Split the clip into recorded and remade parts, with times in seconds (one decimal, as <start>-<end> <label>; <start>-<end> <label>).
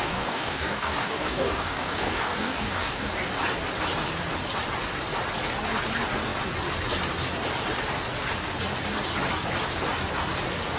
0.0-3.1 remade; 3.1-10.8 recorded